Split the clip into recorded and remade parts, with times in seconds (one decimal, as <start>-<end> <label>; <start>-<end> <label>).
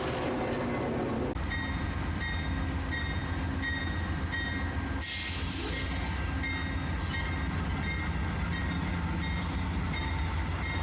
0.0-10.8 recorded